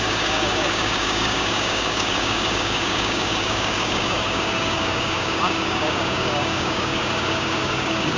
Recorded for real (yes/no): no